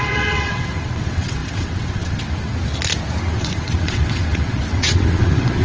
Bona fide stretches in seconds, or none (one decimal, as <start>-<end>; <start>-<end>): 2.5-3.3